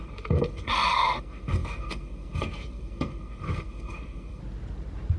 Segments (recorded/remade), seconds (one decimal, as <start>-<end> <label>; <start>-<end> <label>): 0.0-4.4 remade; 4.4-5.2 recorded